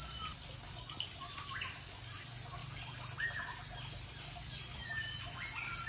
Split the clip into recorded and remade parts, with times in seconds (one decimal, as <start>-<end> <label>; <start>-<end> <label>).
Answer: 0.0-5.9 recorded